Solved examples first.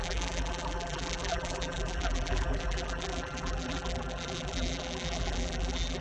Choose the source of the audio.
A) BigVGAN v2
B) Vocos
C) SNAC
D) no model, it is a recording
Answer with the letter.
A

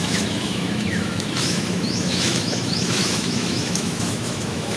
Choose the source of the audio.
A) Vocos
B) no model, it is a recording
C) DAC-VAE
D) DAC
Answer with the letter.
C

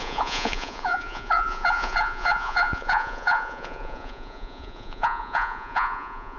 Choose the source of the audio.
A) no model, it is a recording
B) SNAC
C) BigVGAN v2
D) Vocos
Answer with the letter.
D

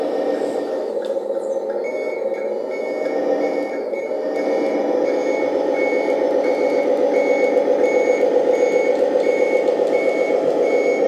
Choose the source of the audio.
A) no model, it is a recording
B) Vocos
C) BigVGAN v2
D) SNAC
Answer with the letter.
A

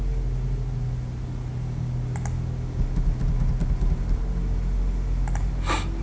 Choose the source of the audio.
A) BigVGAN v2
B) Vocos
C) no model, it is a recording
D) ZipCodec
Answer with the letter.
C